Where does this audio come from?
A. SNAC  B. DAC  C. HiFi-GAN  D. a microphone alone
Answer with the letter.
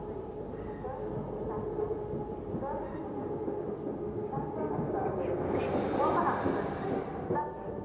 D